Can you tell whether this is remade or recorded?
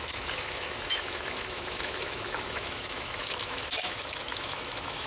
remade